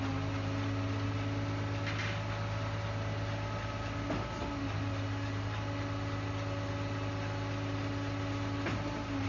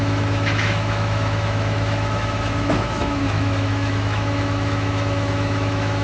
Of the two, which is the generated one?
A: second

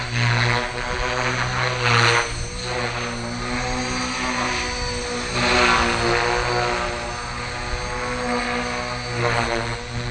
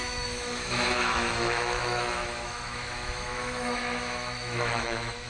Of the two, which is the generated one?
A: second